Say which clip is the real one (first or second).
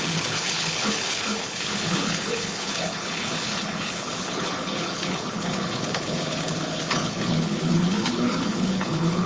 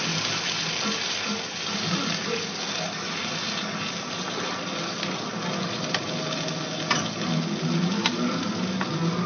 second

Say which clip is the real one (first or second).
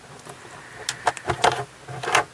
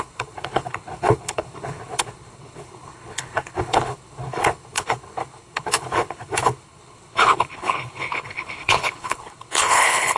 first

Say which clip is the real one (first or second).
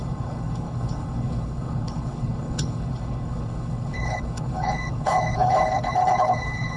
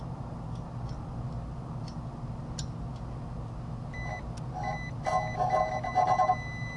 second